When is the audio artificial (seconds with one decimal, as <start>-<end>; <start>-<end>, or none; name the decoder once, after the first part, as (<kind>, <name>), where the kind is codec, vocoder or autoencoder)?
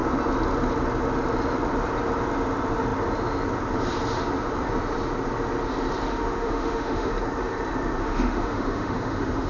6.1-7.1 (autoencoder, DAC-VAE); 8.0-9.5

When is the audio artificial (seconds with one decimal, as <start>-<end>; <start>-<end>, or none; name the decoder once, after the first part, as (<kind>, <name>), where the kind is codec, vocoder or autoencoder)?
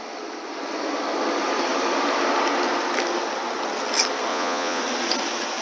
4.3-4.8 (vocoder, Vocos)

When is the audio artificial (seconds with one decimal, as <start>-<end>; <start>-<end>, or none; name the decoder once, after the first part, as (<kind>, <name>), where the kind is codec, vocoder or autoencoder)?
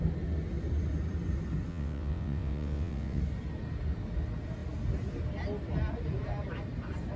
1.7-3.2 (vocoder, WaveNeXt)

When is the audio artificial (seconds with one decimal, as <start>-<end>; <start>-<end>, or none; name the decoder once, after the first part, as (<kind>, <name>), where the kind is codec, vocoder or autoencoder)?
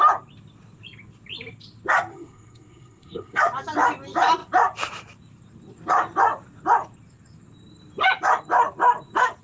2.1-3.4 (codec, SNAC)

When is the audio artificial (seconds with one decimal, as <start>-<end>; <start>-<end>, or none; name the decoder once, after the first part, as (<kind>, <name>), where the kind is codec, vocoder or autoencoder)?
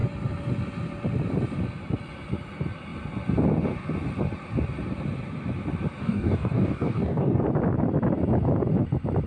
6.0-7.4 (codec, DAC)